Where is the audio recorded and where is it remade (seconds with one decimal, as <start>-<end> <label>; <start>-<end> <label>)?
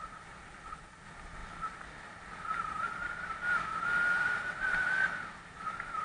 0.0-6.0 recorded